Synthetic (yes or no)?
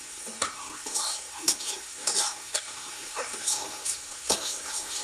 yes